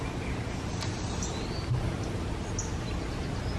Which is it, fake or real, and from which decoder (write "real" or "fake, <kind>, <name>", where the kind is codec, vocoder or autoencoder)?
real